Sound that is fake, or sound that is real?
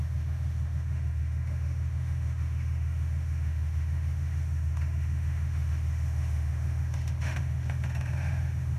fake